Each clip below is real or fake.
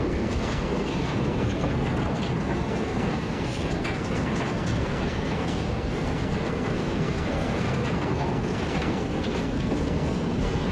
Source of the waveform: fake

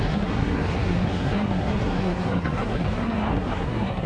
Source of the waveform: fake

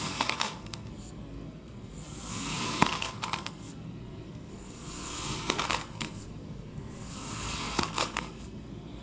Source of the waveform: fake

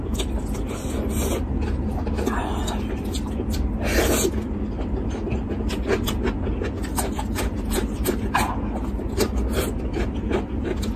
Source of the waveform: real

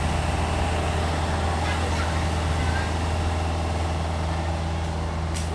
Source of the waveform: real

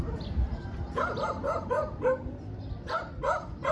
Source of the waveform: real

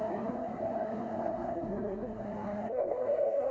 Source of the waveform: fake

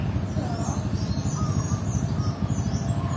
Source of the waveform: real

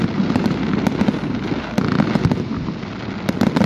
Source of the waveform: real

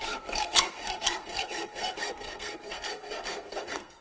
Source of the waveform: fake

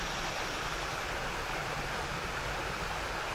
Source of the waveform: real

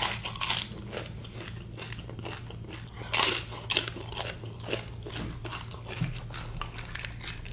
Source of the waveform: real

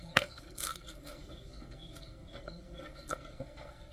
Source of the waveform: fake